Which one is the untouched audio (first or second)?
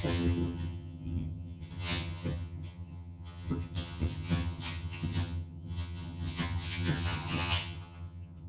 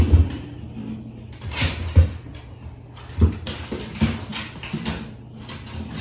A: second